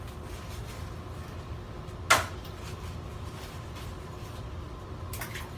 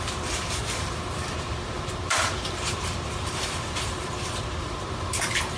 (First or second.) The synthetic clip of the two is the second